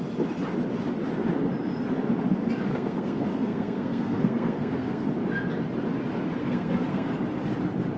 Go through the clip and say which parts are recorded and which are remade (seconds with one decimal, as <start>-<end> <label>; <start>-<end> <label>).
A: 0.0-2.7 recorded; 2.7-5.1 remade; 5.1-6.4 recorded; 6.4-7.1 remade; 7.1-8.0 recorded